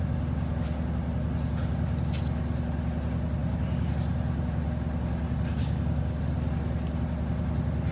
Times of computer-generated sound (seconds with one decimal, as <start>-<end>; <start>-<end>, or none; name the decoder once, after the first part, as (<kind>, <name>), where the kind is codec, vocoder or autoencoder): 5.6-6.2 (codec, DAC)